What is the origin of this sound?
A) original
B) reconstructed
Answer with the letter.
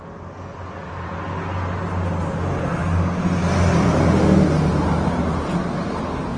A